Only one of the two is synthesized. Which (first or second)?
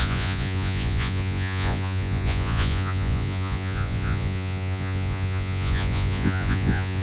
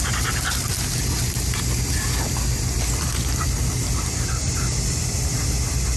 first